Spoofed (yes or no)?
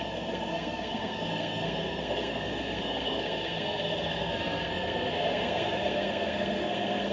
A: yes